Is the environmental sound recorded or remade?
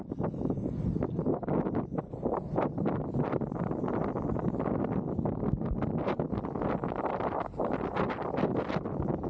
recorded